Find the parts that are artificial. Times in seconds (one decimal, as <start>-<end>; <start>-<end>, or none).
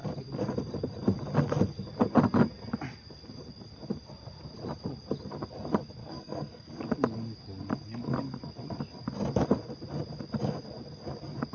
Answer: 6.0-6.7